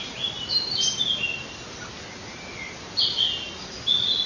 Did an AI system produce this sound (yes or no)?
no